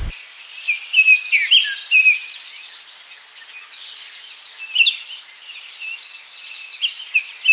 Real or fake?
real